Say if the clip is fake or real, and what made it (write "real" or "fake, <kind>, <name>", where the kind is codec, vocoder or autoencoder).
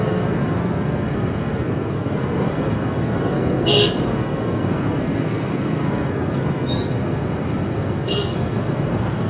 fake, codec, SNAC